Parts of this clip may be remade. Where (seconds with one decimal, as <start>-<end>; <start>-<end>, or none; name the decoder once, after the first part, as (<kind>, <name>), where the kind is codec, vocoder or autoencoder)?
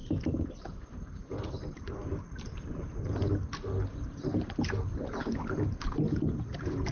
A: 0.0-3.2 (vocoder, BigVGAN v2); 3.9-6.9